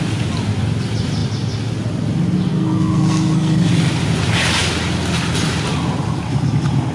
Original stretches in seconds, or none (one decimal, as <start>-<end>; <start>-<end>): 0.0-2.5; 3.7-6.9